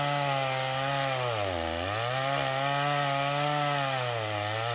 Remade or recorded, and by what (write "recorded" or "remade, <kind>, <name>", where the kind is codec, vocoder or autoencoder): recorded